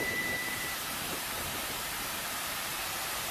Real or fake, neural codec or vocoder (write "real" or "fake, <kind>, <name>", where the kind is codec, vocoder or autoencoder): fake, vocoder, BigVGAN v2